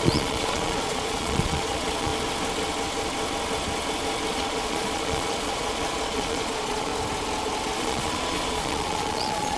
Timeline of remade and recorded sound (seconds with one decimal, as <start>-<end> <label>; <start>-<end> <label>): 0.0-2.1 remade; 2.1-4.3 recorded; 4.3-6.9 remade; 6.9-7.8 recorded; 7.8-9.6 remade